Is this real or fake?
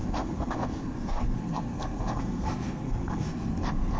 fake